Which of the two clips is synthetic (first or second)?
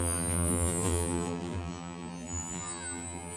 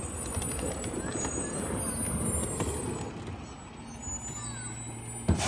first